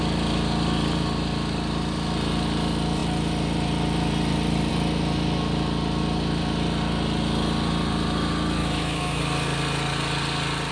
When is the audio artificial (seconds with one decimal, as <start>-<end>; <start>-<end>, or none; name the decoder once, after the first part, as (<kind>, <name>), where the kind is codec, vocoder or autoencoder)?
8.6-9.2 (autoencoder, DAC-VAE)